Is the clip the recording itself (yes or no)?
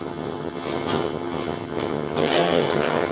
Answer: no